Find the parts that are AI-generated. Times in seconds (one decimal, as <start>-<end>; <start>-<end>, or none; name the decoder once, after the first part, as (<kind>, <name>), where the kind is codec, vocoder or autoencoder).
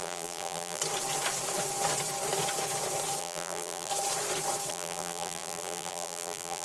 0.0-0.8 (vocoder, BigVGAN v2); 3.2-3.9; 4.7-6.6